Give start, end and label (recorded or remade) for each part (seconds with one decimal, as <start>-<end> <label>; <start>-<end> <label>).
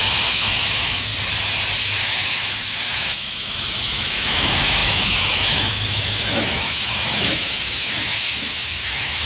0.0-1.1 remade; 1.1-1.8 recorded; 1.8-9.3 remade